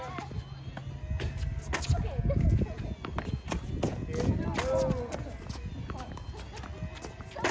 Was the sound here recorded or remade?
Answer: recorded